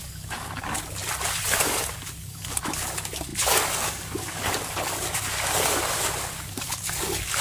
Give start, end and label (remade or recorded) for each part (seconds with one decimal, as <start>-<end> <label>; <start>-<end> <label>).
0.0-1.0 remade; 1.0-1.5 recorded; 1.5-7.4 remade